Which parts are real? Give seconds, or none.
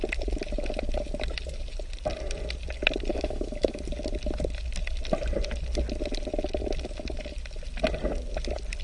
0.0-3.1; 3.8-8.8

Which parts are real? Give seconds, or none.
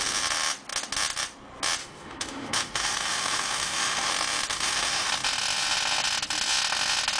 0.0-1.8; 4.1-4.5; 5.1-7.2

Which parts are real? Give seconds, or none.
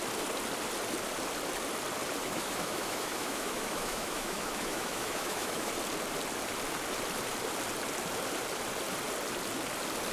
0.0-2.2; 5.7-10.1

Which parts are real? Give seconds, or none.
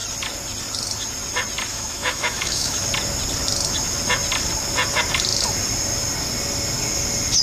0.0-1.7; 2.8-7.4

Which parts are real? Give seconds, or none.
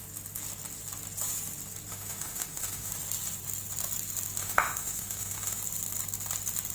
0.0-1.9; 2.9-4.4; 5.6-6.7